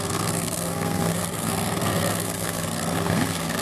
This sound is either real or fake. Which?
fake